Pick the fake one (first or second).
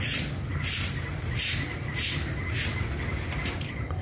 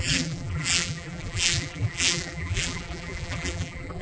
second